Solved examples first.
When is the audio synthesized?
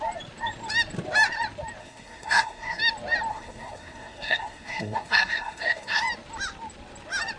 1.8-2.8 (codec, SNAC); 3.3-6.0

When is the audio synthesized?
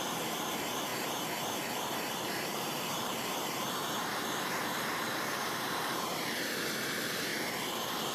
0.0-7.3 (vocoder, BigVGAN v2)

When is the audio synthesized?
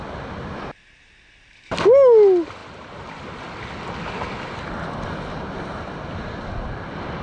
none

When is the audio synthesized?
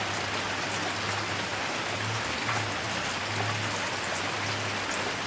none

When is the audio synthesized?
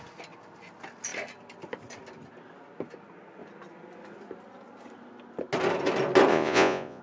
6.3-7.0 (vocoder, Vocos)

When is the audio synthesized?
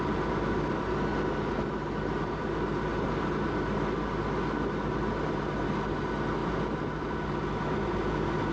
6.4-8.5 (vocoder, BigVGAN v2)